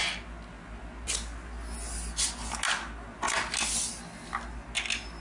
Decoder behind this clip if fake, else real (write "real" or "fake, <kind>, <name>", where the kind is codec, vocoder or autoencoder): real